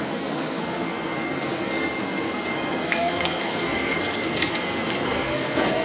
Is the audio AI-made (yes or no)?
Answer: yes